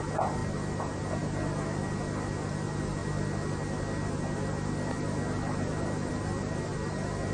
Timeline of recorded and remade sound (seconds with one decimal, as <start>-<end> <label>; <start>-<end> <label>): 0.0-7.3 recorded